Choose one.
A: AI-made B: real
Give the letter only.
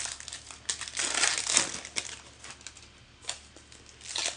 B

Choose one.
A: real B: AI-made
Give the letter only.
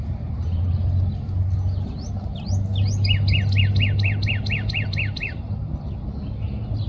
A